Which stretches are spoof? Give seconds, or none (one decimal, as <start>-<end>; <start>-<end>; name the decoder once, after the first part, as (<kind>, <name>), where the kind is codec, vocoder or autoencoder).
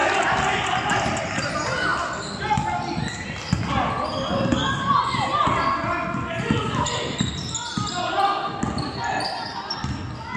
none